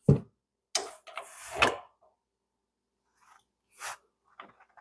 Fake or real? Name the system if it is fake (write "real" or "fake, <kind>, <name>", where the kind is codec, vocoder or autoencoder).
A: real